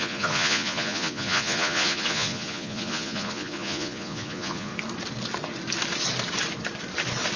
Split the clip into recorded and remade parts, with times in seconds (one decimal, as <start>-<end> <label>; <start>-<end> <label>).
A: 0.0-4.7 remade; 4.7-7.4 recorded